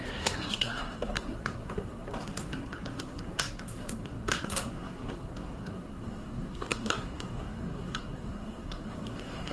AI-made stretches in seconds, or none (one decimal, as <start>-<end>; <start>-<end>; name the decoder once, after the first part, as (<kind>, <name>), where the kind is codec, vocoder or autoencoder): 0.0-9.5 (codec, SNAC)